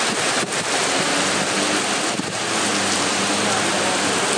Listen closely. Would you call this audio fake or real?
real